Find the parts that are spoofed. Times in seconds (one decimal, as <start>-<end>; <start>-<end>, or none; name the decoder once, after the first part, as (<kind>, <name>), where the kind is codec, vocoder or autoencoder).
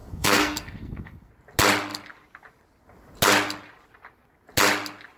0.0-1.3 (codec, SNAC)